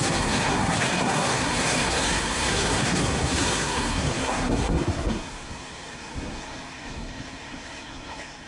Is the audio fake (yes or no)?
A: yes